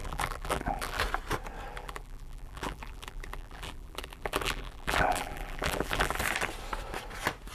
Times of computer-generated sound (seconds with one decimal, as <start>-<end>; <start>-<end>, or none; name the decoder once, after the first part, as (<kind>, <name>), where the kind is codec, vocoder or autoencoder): 0.0-1.0 (vocoder, BigVGAN v2); 1.7-6.2